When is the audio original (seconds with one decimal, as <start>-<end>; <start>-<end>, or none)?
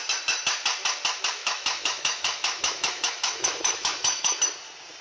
0.0-1.4; 4.4-5.0